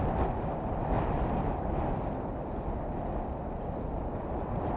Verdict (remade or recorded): recorded